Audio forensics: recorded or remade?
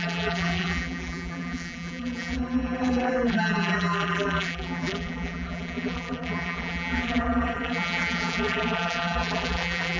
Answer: remade